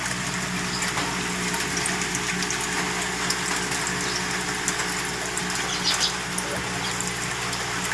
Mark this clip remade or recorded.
recorded